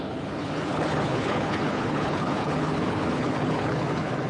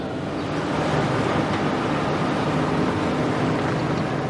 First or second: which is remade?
first